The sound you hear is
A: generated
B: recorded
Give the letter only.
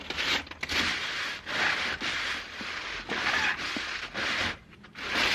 B